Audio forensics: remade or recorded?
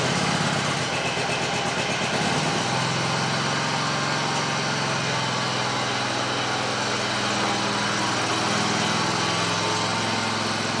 recorded